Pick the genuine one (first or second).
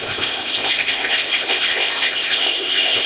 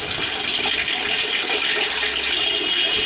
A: second